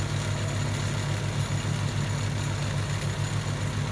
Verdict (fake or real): real